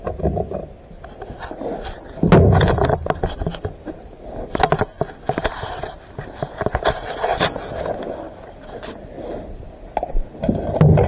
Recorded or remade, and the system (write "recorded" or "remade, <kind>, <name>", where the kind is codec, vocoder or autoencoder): recorded